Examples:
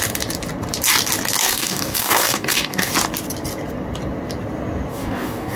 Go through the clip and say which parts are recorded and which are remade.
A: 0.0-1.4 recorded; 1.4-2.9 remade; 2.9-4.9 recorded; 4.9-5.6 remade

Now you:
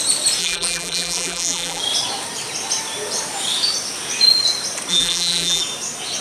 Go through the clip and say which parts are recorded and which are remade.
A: 0.0-0.4 recorded; 0.4-1.8 remade; 1.8-4.9 recorded; 4.9-5.6 remade; 5.6-6.2 recorded

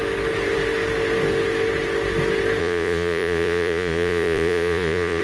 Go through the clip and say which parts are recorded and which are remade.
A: 0.0-2.6 recorded; 2.6-5.2 remade